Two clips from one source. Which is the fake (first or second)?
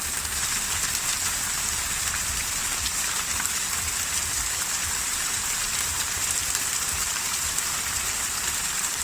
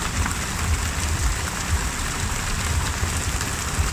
first